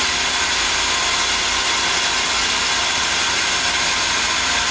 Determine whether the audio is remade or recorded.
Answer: recorded